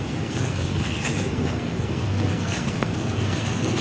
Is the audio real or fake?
fake